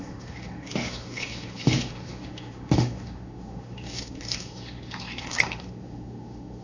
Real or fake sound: fake